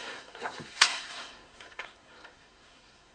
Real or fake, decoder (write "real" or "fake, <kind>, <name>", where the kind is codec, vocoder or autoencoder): fake, codec, SNAC